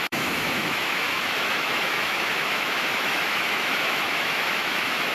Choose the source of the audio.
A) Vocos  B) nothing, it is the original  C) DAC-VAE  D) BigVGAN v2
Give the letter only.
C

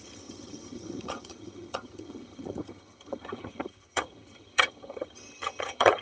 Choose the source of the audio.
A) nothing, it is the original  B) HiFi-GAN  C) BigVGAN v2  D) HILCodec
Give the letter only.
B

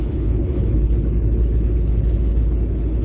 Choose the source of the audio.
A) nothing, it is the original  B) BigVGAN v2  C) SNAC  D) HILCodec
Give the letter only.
D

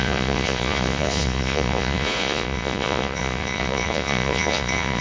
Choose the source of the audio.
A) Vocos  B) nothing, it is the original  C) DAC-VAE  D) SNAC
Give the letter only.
A